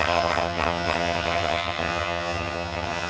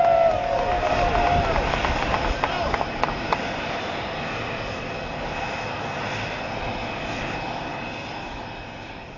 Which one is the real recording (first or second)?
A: second